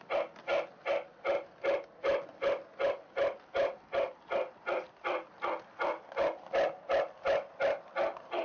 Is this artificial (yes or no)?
no